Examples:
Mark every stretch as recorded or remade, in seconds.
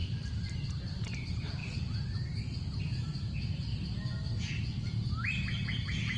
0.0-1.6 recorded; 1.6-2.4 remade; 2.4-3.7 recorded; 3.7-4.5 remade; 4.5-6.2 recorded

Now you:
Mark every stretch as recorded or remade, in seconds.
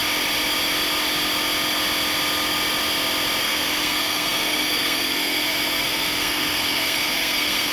0.0-3.4 recorded; 3.4-7.7 remade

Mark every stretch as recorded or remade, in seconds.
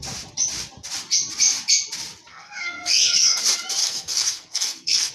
0.0-2.3 recorded; 2.3-3.4 remade; 3.4-3.8 recorded; 3.8-5.1 remade